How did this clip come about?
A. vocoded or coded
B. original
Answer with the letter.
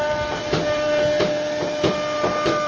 B